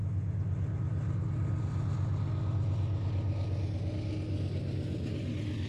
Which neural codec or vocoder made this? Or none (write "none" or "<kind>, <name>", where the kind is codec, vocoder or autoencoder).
none